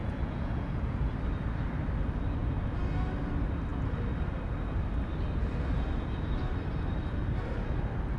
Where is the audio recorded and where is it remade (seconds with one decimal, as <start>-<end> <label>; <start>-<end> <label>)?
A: 0.0-1.1 remade; 1.1-8.2 recorded